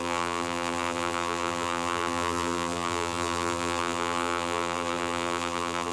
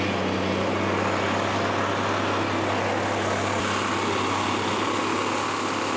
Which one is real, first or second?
second